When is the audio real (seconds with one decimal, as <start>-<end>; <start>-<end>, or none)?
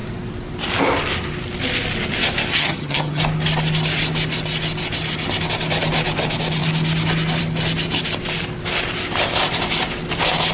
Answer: 0.0-2.5; 3.2-10.5